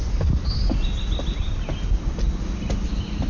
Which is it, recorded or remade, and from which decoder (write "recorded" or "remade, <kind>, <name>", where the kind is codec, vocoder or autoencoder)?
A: recorded